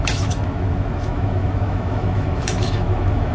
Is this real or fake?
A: fake